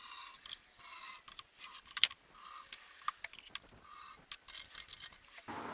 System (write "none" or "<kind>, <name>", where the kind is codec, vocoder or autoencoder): none